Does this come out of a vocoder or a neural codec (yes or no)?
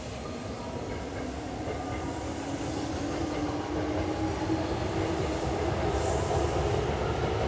no